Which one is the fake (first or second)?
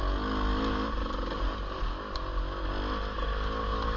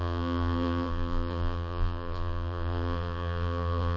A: second